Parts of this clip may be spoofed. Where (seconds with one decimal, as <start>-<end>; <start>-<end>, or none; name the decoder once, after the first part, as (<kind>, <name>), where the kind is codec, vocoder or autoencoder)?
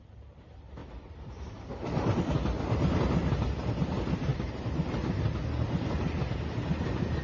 0.8-2.2 (vocoder, BigVGAN v2); 4.3-4.9